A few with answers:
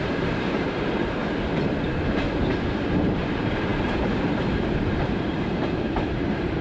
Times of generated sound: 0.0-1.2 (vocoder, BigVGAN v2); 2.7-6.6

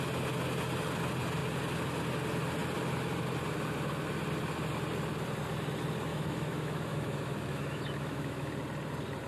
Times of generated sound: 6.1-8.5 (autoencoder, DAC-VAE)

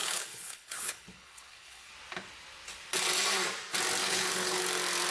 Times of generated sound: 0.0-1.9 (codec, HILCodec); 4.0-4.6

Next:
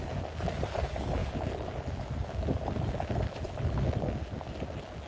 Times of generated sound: none

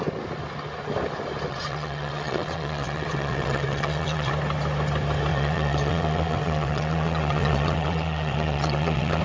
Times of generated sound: 1.5-4.3 (vocoder, WaveNeXt); 5.3-9.2

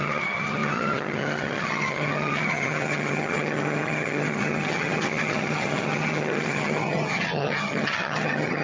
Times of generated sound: 0.0-8.6 (vocoder, HiFi-GAN)